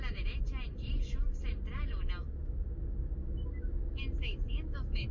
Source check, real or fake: real